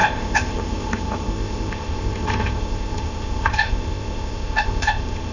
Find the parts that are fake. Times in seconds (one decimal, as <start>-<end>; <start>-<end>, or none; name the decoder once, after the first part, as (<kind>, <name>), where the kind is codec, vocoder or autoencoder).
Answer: 0.0-5.3 (codec, ZipCodec)